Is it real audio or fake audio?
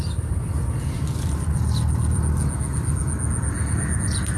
real